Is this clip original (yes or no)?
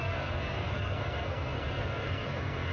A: no